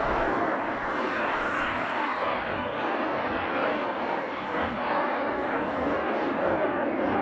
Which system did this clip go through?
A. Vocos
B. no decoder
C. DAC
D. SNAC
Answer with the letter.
C